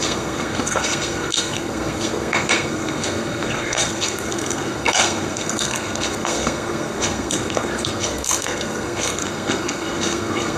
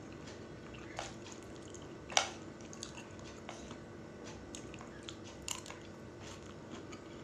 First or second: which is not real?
first